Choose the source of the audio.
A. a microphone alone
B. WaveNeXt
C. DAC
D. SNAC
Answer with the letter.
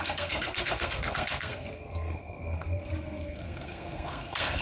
D